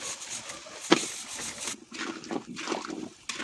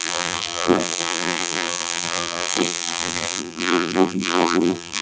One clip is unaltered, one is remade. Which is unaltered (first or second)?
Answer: first